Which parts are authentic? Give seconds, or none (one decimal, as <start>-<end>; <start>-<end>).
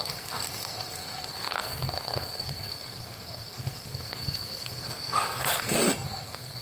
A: none